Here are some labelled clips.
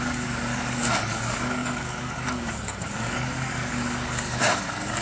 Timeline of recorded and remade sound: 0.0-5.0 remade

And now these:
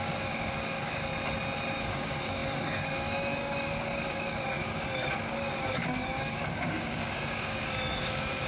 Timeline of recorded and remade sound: 0.0-1.1 remade; 1.1-1.8 recorded; 1.8-8.5 remade

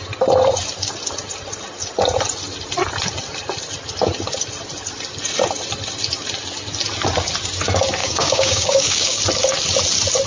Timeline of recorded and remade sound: 0.0-8.0 recorded; 8.0-9.2 remade; 9.2-10.3 recorded

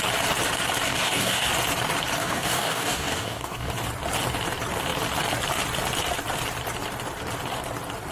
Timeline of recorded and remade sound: 0.0-0.9 recorded; 0.9-1.5 remade; 1.5-2.2 recorded; 2.2-3.7 remade; 3.7-8.1 recorded